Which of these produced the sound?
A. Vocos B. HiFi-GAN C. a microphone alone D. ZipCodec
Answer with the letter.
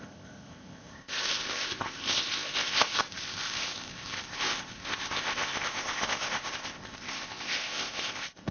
D